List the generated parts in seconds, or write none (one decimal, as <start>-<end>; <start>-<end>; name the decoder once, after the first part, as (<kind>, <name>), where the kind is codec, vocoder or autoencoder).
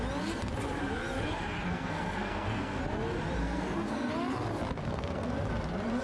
1.7-2.8 (codec, SNAC); 3.4-4.1; 4.8-5.3